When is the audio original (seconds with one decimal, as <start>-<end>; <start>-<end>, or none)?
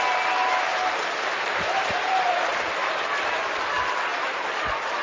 0.0-0.4; 2.7-4.1